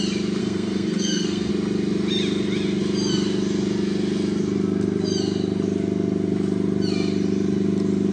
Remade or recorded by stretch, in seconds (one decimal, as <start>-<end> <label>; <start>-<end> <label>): 0.0-0.4 recorded; 0.4-1.5 remade; 1.5-8.1 recorded